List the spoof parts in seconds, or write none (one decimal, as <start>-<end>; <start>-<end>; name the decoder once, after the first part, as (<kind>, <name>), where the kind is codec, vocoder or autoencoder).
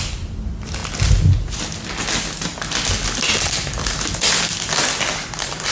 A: none